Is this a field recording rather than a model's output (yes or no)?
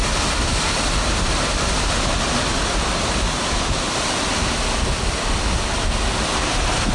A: yes